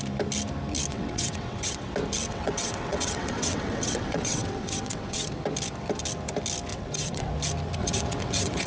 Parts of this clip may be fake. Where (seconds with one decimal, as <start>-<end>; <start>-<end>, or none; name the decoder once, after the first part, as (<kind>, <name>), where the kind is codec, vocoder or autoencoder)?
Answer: 0.9-1.9 (vocoder, WaveNeXt); 2.3-5.3; 6.7-7.3; 7.8-8.7